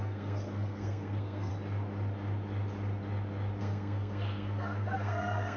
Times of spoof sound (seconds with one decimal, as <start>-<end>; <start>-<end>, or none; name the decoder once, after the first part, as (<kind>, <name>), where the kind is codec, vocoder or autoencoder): 0.0-1.5 (codec, SNAC); 3.6-5.6